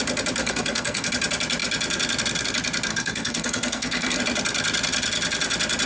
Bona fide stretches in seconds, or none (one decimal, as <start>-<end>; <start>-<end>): 0.0-0.4; 1.1-2.9; 4.2-5.9